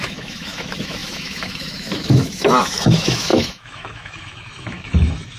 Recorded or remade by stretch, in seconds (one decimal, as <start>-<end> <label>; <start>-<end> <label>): 0.0-5.4 remade